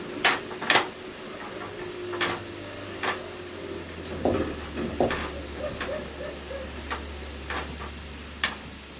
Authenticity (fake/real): real